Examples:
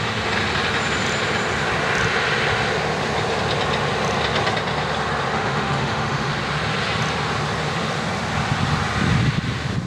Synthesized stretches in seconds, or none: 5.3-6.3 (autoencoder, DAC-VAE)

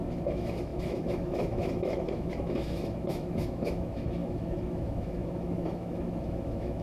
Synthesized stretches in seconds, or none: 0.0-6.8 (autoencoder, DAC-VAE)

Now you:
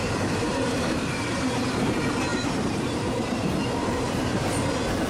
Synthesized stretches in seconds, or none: 0.0-1.9 (vocoder, BigVGAN v2); 2.3-4.5